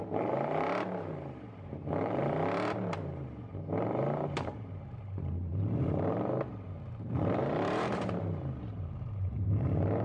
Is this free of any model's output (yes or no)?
no